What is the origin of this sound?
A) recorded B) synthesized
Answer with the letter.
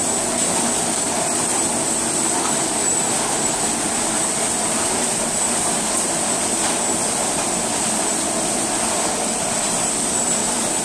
B